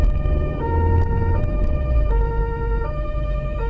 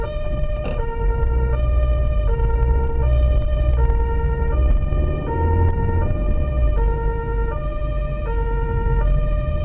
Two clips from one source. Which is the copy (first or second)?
first